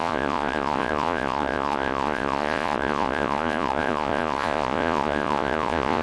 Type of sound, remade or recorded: remade